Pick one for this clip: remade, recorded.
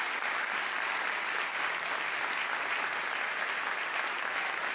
recorded